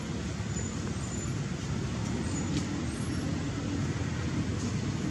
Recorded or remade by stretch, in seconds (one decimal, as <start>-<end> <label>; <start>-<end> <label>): 0.0-5.1 recorded